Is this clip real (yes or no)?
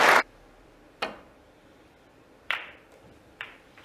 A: no